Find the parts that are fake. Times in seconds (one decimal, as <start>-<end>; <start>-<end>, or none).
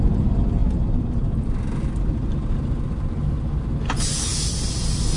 none